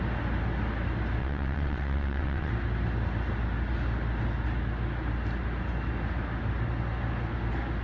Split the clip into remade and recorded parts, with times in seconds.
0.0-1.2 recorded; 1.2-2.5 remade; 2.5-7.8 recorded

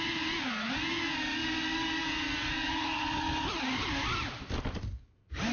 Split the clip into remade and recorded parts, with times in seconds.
0.0-5.5 recorded

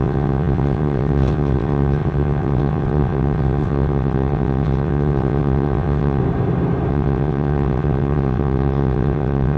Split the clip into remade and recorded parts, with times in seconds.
0.0-6.2 remade; 6.2-6.9 recorded; 6.9-9.6 remade

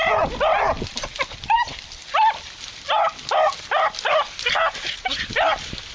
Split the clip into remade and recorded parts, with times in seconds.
0.0-5.9 recorded